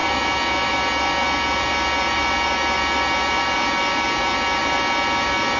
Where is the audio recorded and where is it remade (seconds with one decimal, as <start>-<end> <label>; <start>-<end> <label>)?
0.0-5.6 recorded